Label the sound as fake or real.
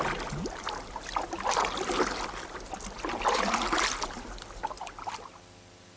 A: real